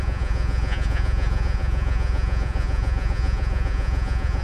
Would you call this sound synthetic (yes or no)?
yes